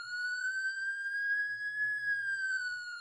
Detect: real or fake fake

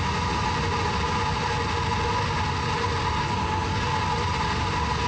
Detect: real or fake real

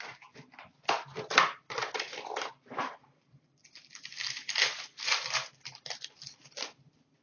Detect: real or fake fake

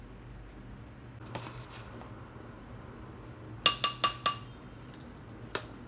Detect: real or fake real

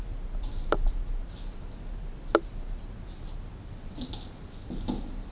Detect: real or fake real